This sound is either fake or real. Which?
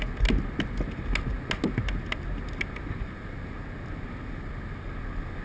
real